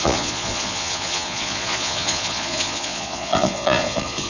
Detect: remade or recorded remade